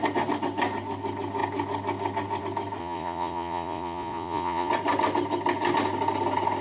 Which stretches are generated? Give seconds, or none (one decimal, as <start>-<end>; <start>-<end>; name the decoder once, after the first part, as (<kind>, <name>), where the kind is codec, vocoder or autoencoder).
2.8-4.7 (vocoder, Vocos)

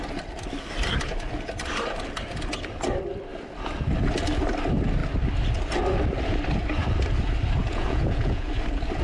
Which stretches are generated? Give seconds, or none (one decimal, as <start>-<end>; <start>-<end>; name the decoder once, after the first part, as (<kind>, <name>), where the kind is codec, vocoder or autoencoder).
7.6-8.5 (vocoder, Vocos)

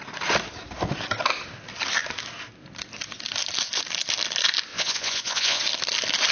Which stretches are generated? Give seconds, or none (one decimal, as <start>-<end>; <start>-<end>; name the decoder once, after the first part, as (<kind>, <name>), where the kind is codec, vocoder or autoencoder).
4.7-5.6 (vocoder, Vocos)

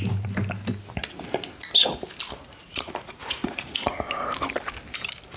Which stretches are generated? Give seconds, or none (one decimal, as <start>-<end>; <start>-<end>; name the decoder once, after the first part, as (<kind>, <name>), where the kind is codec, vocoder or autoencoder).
2.6-3.8 (vocoder, Vocos)

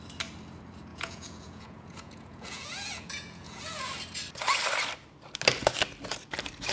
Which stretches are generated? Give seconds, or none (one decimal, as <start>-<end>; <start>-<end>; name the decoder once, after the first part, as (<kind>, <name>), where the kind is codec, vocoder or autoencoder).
0.9-3.9 (vocoder, Vocos)

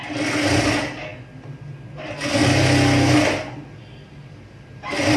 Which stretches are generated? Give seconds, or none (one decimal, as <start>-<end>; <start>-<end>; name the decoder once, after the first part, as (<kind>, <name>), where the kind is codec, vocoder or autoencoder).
none

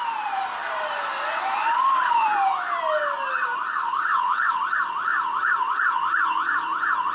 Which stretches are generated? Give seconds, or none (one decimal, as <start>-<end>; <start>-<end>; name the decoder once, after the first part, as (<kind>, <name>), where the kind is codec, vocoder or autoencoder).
3.8-4.6 (vocoder, Vocos); 5.1-7.1

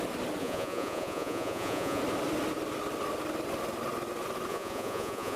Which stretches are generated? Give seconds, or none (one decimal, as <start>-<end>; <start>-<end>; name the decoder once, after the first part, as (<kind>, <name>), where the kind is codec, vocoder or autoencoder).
0.4-2.0 (vocoder, Vocos); 4.5-5.4